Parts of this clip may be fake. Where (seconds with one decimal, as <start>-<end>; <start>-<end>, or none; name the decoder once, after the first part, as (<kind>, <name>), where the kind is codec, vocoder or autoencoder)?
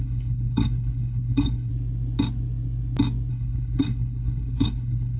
0.0-1.7 (codec, HILCodec); 3.3-5.2